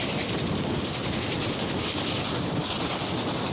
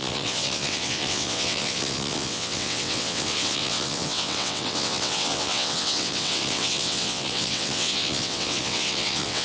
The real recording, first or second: first